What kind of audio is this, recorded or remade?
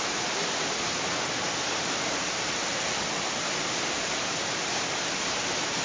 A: recorded